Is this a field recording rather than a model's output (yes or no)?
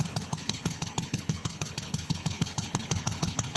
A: no